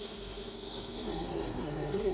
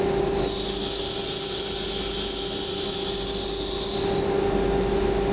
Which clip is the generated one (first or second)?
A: first